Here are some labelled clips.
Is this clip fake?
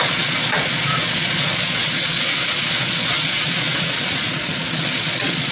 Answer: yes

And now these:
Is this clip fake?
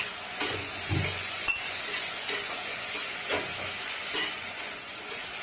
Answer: yes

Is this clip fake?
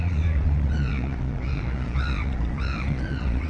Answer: yes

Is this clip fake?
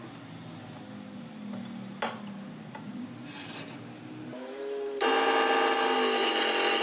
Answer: no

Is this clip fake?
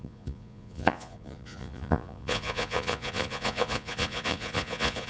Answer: yes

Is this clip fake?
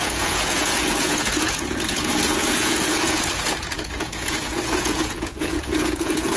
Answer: yes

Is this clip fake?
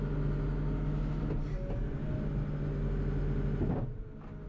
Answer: no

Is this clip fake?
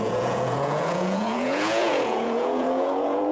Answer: yes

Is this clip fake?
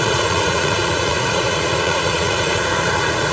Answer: yes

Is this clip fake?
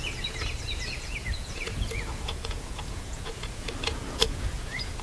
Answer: yes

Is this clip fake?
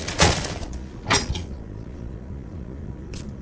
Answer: yes